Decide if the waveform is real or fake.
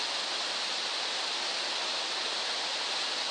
real